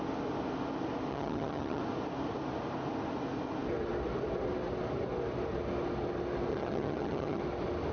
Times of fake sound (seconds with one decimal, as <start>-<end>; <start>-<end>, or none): 1.1-1.8; 6.5-7.4